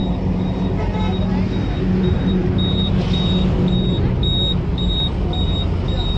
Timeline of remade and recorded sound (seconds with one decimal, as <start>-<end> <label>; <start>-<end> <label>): 0.0-6.2 recorded